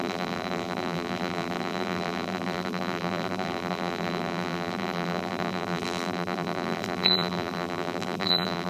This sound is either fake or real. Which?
fake